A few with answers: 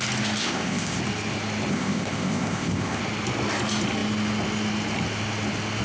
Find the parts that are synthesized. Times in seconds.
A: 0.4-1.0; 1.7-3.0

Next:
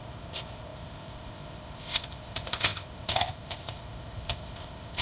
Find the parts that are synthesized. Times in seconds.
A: 0.0-5.0

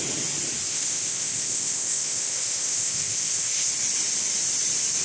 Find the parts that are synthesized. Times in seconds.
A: 0.7-3.7

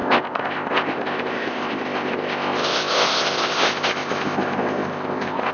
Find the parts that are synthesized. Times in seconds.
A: 0.0-5.5

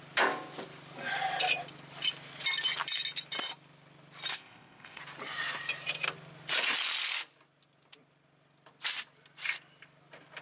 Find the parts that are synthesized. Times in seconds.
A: 4.3-5.0

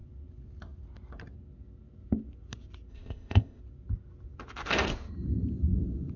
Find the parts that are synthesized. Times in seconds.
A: 2.9-3.6

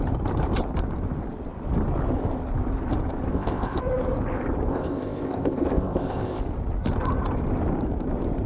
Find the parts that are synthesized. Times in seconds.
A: 3.3-3.8; 4.7-6.4